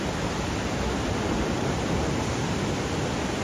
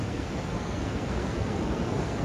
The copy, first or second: second